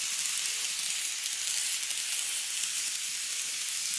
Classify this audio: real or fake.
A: real